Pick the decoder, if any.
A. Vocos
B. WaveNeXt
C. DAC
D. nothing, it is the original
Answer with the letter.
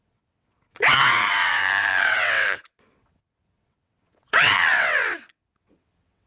B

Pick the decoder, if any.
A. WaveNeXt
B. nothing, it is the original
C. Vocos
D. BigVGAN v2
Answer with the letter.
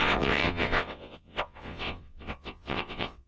A